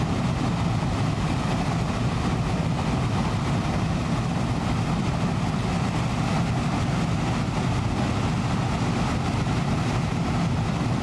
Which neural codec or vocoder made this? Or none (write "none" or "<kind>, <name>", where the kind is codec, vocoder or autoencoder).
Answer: none